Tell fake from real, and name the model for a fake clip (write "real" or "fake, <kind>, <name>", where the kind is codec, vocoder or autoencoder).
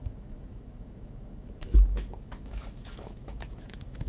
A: fake, autoencoder, DAC-VAE